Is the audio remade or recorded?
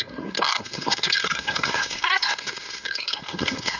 remade